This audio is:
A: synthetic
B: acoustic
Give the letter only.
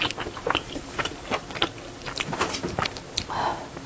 B